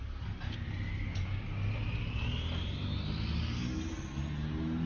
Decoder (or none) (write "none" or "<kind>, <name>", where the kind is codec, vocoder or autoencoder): none